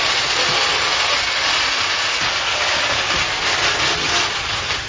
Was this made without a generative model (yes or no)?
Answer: yes